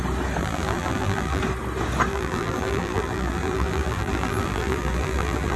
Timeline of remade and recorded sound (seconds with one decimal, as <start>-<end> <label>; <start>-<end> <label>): 0.0-0.4 recorded; 0.4-1.4 remade; 1.4-2.1 recorded; 2.1-5.6 remade

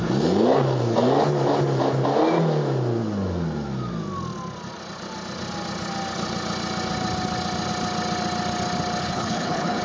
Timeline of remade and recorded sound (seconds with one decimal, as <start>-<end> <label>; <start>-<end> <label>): 0.0-9.0 recorded; 9.0-9.8 remade

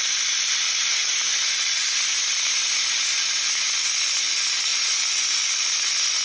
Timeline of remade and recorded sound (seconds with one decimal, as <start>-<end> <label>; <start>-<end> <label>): 0.0-6.2 recorded

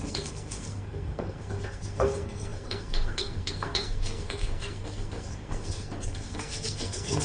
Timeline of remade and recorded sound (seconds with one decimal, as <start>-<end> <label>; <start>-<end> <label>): 0.0-7.2 remade

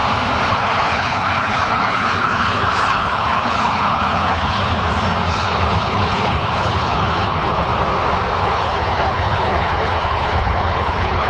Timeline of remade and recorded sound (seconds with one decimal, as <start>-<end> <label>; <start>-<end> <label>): 0.0-0.5 recorded; 0.5-4.7 remade; 4.7-5.3 recorded; 5.3-7.7 remade; 7.7-8.4 recorded; 8.4-11.3 remade

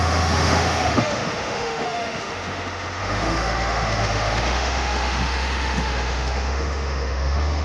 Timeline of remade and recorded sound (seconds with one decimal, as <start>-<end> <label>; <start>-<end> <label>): 0.0-7.6 remade